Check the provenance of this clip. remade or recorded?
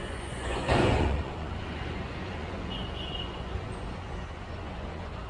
remade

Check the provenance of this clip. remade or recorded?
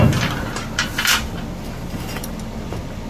recorded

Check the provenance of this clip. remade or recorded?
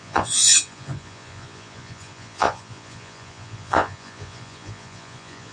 remade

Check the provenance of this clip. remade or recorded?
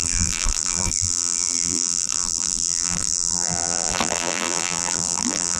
remade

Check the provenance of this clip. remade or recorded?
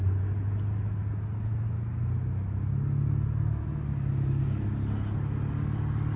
recorded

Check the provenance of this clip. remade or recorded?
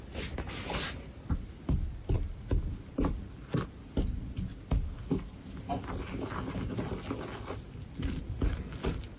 recorded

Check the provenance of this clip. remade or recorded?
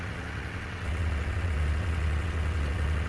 remade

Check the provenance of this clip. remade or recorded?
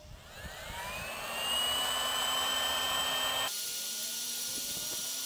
remade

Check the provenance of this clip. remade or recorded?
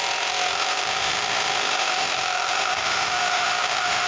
remade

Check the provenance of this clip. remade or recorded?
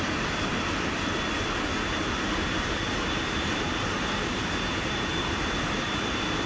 remade